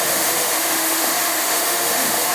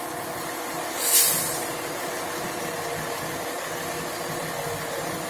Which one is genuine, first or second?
second